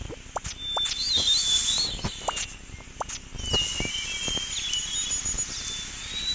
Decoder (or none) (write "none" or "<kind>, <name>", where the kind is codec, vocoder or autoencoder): none